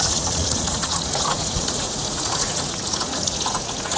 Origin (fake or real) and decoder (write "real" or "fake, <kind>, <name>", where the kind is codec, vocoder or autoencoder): fake, vocoder, Vocos